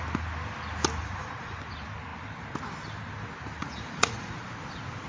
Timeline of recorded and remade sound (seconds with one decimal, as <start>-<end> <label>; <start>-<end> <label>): 0.0-1.0 recorded; 1.0-1.6 remade; 1.6-3.6 recorded; 3.6-4.4 remade; 4.4-5.1 recorded